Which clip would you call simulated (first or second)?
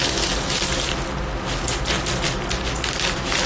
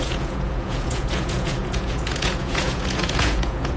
second